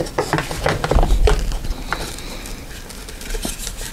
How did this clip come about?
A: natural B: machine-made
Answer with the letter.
A